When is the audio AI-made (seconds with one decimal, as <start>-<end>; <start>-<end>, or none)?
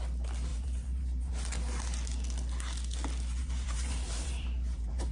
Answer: 0.5-1.3; 3.4-5.1